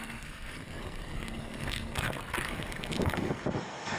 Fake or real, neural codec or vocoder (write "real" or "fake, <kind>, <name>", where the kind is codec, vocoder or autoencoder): fake, codec, SNAC